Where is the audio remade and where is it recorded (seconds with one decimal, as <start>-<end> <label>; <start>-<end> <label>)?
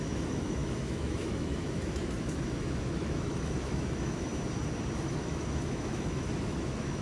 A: 0.0-4.3 remade; 4.3-5.0 recorded; 5.0-7.0 remade